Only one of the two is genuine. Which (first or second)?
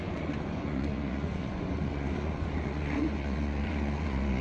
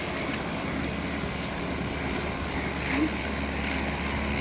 second